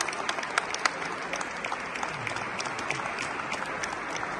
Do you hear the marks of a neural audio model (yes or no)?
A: no